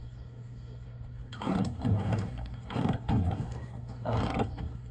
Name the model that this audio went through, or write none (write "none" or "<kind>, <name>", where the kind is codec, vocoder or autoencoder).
codec, SNAC